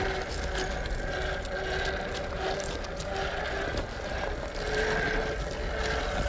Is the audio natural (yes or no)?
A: yes